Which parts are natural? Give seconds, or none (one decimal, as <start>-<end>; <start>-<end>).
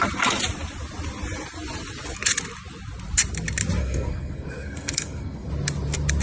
0.0-3.8; 5.5-6.2